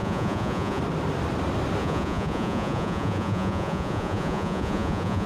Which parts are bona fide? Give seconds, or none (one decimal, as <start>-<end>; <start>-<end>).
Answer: 0.8-1.8